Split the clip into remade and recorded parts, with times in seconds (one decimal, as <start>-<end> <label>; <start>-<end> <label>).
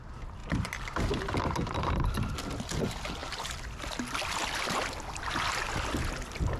0.0-6.6 recorded